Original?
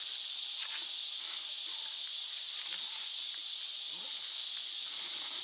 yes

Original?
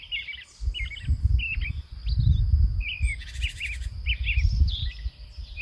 yes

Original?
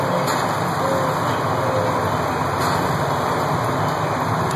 yes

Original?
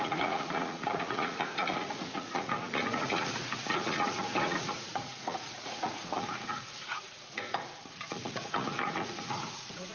no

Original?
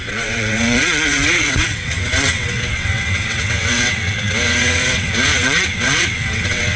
no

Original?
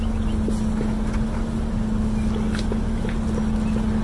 yes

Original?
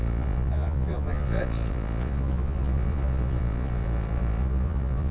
no